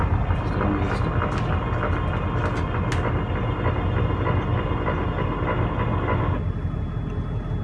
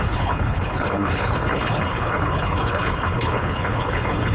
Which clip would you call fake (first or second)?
second